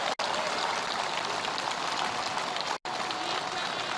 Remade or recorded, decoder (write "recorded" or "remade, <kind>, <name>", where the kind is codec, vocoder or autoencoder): recorded